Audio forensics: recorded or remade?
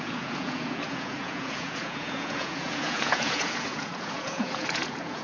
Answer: remade